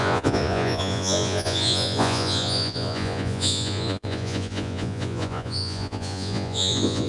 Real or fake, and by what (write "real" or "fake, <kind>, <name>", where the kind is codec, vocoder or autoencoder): fake, vocoder, Vocos